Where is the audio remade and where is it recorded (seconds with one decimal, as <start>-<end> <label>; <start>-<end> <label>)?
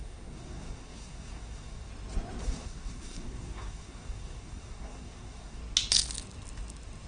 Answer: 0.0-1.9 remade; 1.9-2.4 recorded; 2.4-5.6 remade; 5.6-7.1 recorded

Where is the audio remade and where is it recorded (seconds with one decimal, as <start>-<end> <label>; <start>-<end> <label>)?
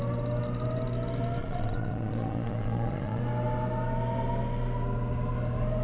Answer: 0.0-1.4 recorded; 1.4-3.2 remade; 3.2-5.8 recorded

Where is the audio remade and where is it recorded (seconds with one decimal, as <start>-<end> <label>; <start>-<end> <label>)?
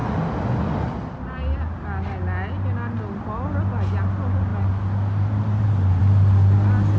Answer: 0.0-7.0 recorded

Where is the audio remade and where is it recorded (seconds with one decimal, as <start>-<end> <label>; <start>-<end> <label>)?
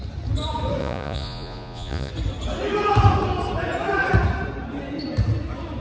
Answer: 0.0-0.8 recorded; 0.8-2.1 remade; 2.1-5.8 recorded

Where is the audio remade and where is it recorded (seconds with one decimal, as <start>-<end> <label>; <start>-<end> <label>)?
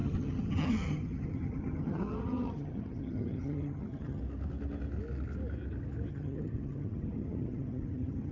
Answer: 0.0-4.2 remade; 4.2-6.1 recorded; 6.1-8.3 remade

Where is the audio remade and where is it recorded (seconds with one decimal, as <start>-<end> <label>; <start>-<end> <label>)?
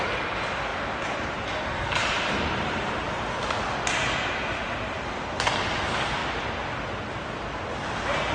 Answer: 0.0-8.3 recorded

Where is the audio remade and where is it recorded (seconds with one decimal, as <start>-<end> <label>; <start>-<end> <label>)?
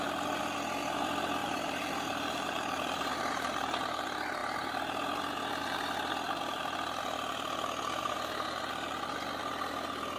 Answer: 0.0-1.4 recorded; 1.4-3.8 remade; 3.8-10.2 recorded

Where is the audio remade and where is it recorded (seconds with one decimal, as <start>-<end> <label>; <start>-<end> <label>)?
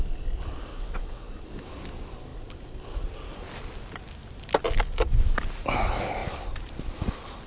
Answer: 0.0-0.7 recorded; 0.7-1.3 remade; 1.3-7.5 recorded